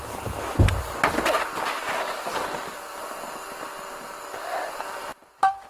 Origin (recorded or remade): recorded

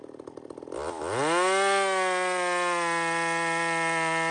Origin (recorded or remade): recorded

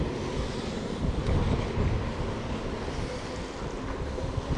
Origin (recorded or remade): recorded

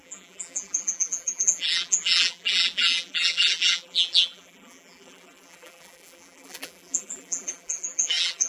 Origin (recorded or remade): remade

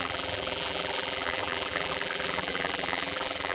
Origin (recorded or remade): remade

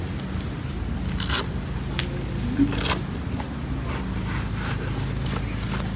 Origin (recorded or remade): recorded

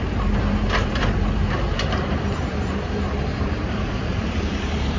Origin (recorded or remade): remade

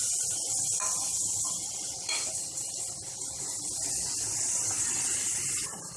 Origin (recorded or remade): remade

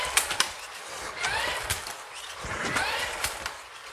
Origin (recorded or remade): remade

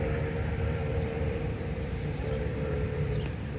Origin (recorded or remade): remade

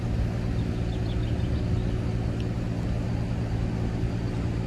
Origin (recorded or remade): recorded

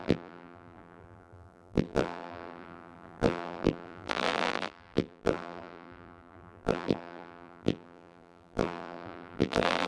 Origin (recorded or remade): remade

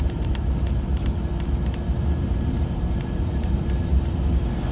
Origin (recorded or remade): remade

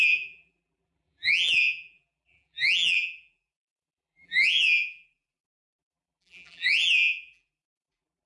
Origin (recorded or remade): remade